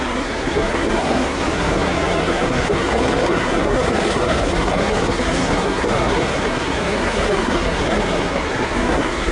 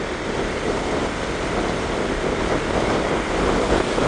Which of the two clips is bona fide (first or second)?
second